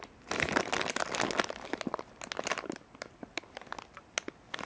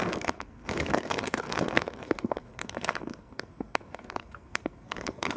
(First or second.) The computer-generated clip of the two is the second